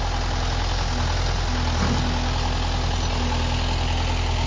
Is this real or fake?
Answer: real